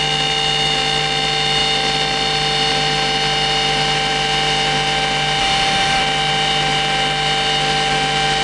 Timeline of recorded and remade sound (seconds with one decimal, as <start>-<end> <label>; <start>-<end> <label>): 0.0-5.4 recorded; 5.4-6.0 remade; 6.0-8.4 recorded